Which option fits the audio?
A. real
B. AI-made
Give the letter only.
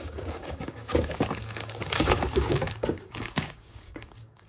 B